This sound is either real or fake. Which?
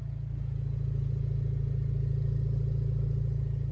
real